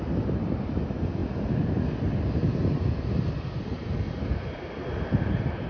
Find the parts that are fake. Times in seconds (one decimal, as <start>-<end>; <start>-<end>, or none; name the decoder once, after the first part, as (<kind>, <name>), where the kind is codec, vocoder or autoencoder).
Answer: none